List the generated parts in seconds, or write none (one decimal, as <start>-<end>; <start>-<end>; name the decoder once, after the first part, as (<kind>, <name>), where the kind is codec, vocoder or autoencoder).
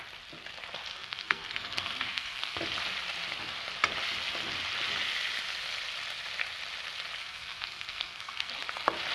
0.9-2.6 (codec, SNAC); 7.2-8.5